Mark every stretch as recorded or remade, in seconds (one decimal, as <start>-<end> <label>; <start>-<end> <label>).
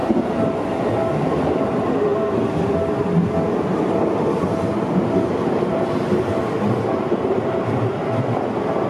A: 0.0-8.9 recorded